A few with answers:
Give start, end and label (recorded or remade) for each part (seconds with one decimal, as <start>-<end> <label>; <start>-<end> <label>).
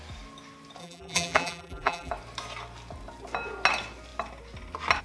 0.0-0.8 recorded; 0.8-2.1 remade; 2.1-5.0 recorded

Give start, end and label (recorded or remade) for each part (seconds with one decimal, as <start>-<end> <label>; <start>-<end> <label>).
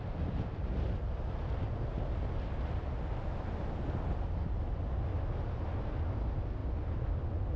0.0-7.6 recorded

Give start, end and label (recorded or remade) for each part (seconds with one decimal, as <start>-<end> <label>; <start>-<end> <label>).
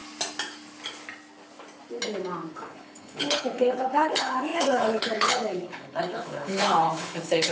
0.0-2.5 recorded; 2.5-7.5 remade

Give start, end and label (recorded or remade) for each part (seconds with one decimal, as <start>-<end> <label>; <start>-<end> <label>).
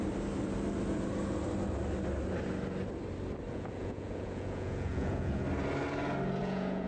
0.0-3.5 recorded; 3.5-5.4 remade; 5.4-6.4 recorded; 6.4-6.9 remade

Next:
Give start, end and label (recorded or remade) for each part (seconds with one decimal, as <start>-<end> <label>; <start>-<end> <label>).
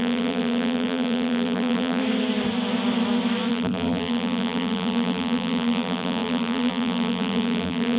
0.0-2.0 remade; 2.0-3.5 recorded; 3.5-8.0 remade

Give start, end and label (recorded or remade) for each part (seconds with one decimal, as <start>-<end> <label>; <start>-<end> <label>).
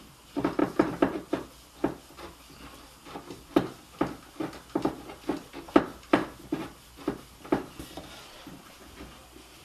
0.0-9.6 recorded